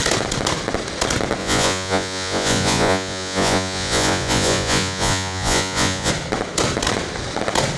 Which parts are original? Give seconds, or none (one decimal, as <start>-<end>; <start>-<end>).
0.0-1.4; 6.1-7.8